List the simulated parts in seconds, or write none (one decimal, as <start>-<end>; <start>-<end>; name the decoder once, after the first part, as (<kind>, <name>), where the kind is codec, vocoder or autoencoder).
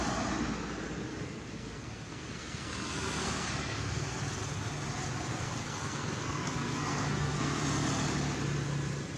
1.1-4.2 (codec, SNAC); 5.3-7.6